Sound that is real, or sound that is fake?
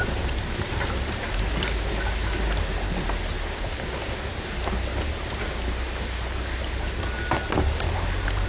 real